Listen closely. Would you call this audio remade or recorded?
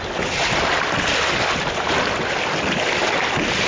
recorded